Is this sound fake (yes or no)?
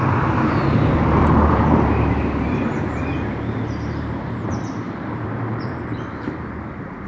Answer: yes